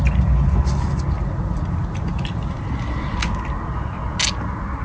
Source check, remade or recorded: recorded